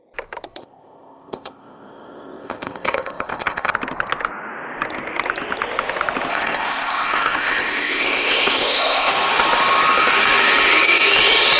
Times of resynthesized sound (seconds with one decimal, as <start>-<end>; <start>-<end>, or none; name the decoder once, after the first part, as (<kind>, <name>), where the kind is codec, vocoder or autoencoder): 0.6-3.7 (codec, ZipCodec); 6.3-9.1